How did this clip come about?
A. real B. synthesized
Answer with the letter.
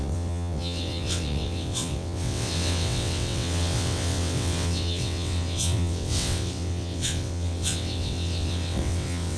B